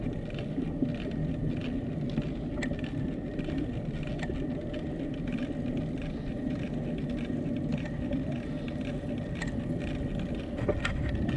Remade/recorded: recorded